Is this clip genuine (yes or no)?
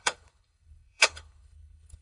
no